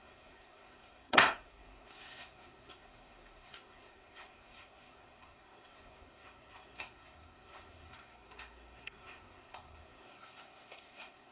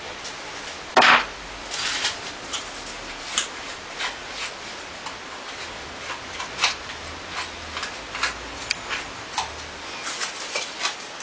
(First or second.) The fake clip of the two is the first